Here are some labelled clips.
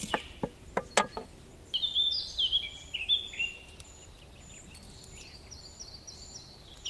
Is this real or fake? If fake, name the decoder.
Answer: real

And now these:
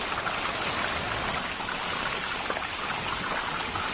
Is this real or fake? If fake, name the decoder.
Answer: real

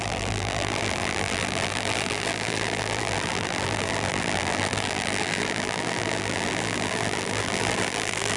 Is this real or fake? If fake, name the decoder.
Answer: fake, vocoder, BigVGAN v2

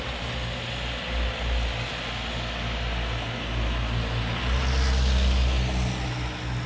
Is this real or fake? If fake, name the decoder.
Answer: real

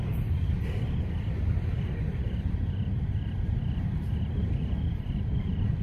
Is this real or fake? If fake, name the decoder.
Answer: fake, vocoder, BigVGAN v2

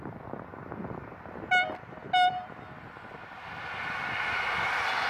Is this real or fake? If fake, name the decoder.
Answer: real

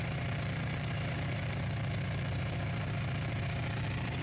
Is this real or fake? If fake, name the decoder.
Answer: fake, vocoder, BigVGAN v2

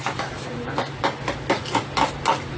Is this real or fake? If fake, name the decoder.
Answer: real